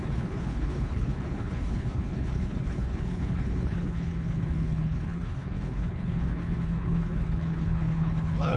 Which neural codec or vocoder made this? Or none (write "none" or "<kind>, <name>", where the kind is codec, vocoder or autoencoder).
codec, HILCodec